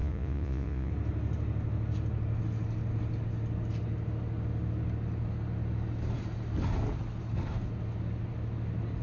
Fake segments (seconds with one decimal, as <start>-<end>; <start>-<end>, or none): 0.0-0.9